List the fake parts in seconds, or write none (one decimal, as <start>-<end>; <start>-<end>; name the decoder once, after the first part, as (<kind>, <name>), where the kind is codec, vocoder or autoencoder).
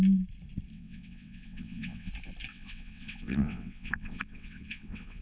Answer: 0.7-2.1 (vocoder, WaveNeXt); 2.5-5.2